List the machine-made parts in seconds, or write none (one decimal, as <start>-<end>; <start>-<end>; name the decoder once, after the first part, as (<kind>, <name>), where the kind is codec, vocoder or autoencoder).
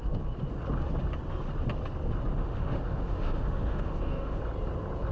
2.3-4.4 (autoencoder, DAC-VAE)